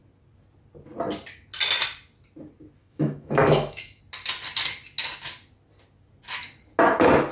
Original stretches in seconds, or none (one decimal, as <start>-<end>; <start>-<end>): 0.0-2.8; 4.0-7.3